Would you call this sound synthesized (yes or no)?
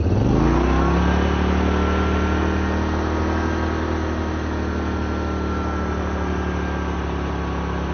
no